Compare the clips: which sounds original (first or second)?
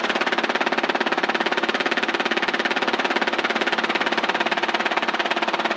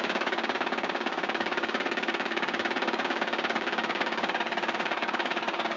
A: first